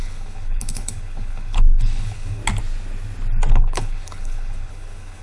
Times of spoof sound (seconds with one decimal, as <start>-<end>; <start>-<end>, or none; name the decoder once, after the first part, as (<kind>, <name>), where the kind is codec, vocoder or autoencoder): 0.0-2.4 (codec, HILCodec); 3.5-5.2